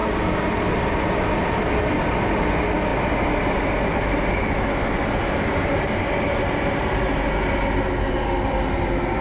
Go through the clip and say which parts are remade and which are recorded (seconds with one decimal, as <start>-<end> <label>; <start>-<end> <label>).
0.0-9.2 recorded